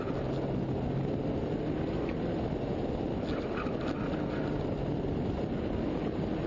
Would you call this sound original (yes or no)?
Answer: yes